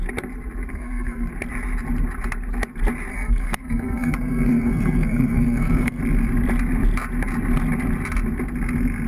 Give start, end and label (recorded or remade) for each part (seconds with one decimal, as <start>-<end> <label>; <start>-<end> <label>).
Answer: 0.0-0.7 recorded; 0.7-1.3 remade; 1.3-3.1 recorded; 3.1-6.0 remade; 6.0-9.1 recorded